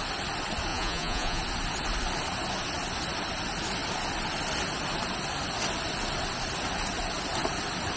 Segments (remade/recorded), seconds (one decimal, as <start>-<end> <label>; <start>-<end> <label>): 0.0-0.7 recorded; 0.7-1.4 remade; 1.4-8.0 recorded